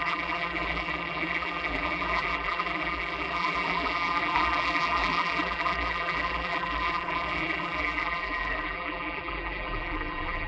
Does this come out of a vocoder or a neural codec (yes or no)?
yes